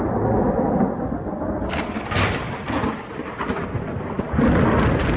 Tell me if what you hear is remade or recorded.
recorded